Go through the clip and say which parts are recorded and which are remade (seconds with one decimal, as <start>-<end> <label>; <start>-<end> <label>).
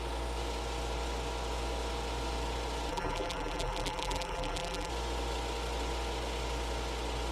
0.0-2.9 recorded; 2.9-4.9 remade; 4.9-7.3 recorded